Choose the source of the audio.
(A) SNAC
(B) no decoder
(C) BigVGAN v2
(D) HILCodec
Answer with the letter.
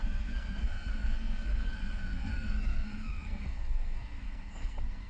A